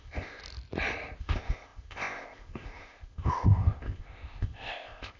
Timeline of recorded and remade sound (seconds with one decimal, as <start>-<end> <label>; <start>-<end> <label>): 0.0-0.4 remade; 0.4-1.2 recorded; 1.2-5.2 remade